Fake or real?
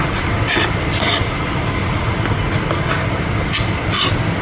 real